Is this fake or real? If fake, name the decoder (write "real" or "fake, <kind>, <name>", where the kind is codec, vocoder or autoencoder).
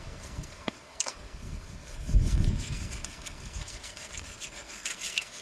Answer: fake, codec, SNAC